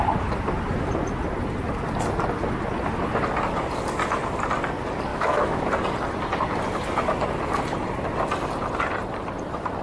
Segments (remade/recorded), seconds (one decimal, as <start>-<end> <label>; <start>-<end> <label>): 0.0-5.1 recorded; 5.1-5.6 remade; 5.6-9.8 recorded